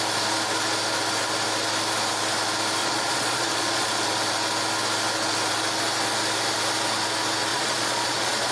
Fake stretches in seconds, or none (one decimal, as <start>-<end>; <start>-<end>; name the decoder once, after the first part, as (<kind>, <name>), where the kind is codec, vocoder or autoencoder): 2.8-4.0 (vocoder, Vocos); 7.5-8.5